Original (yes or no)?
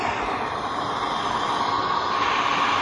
yes